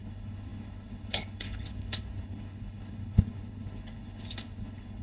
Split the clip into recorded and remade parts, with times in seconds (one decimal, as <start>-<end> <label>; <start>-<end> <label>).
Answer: 0.0-5.0 remade